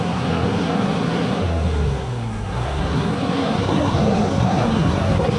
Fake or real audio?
fake